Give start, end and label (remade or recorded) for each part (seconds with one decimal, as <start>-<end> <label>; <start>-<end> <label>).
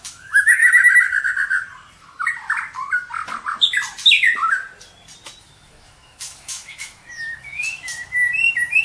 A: 0.0-0.6 remade; 0.6-5.4 recorded; 5.4-8.8 remade